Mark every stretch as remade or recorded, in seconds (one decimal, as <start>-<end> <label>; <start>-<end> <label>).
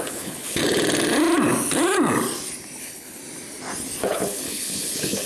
0.0-0.6 remade; 0.6-2.8 recorded; 2.8-3.2 remade; 3.2-4.0 recorded; 4.0-5.3 remade